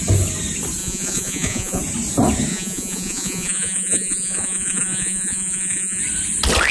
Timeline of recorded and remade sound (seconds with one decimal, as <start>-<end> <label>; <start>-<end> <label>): 0.0-0.8 recorded; 0.8-1.8 remade; 1.8-2.5 recorded; 2.5-6.0 remade; 6.0-6.7 recorded